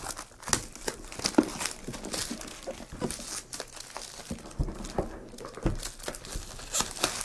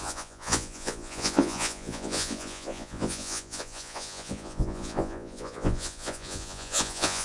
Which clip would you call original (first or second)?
first